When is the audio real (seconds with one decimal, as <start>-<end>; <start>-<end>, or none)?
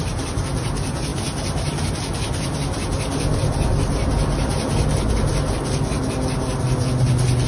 0.0-7.5